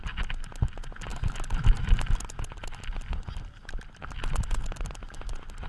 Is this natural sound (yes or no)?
yes